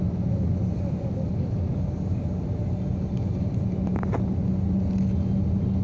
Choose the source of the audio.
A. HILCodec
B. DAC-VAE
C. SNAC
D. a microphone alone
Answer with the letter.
D